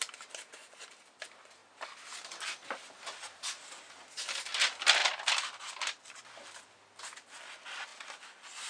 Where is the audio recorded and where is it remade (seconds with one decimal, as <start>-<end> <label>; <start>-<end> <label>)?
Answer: 0.0-0.6 recorded; 0.6-1.2 remade; 1.2-8.7 recorded